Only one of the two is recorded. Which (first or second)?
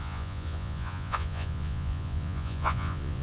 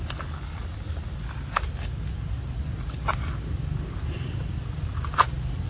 second